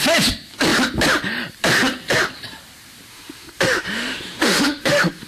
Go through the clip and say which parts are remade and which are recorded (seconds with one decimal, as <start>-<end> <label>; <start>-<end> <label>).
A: 0.0-3.1 recorded; 3.1-5.3 remade